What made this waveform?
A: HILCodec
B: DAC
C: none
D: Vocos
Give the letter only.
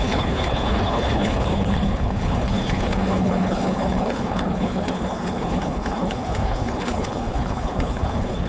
A